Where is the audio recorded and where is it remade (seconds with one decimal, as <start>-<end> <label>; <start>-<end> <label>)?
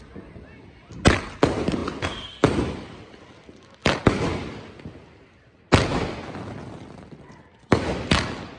0.0-8.6 recorded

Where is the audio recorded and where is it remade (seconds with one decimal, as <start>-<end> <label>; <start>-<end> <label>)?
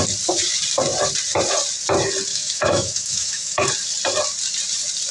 0.0-2.3 recorded; 2.3-3.7 remade; 3.7-5.1 recorded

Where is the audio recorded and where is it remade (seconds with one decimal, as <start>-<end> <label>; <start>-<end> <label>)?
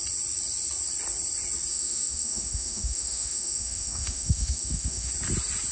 0.0-1.7 recorded; 1.7-5.1 remade; 5.1-5.7 recorded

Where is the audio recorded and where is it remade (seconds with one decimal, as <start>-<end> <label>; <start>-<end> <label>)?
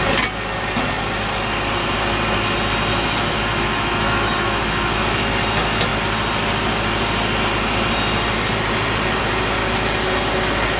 0.0-2.9 recorded; 2.9-5.3 remade; 5.3-10.8 recorded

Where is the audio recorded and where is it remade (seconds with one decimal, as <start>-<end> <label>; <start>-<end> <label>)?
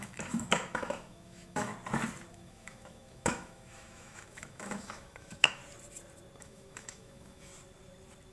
0.0-1.7 remade; 1.7-2.3 recorded; 2.3-5.6 remade; 5.6-6.4 recorded; 6.4-7.5 remade; 7.5-8.3 recorded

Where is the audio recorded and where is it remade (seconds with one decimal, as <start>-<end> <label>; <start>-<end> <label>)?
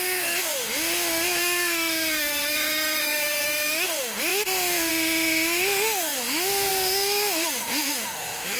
0.0-8.6 remade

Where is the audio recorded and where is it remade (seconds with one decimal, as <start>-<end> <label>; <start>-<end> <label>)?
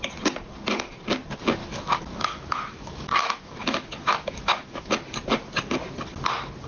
0.0-1.6 recorded; 1.6-4.9 remade; 4.9-6.7 recorded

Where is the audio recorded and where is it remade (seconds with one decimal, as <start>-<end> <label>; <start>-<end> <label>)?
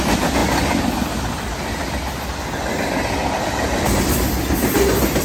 0.0-5.2 recorded